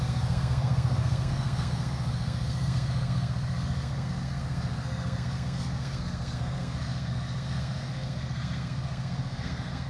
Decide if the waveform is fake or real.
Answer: fake